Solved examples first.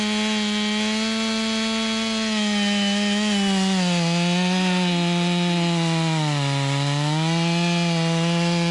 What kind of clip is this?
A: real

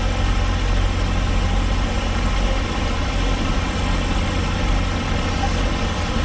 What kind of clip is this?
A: real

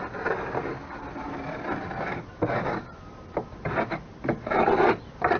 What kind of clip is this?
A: real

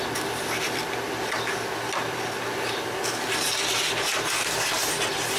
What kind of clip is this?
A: real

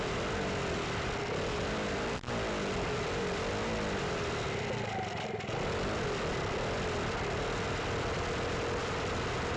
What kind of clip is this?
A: real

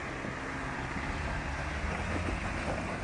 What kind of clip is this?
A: real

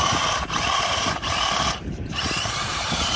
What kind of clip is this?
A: fake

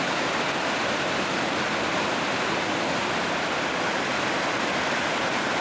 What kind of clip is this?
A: fake